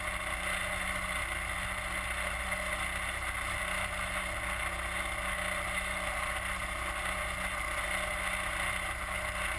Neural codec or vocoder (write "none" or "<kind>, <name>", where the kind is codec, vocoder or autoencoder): none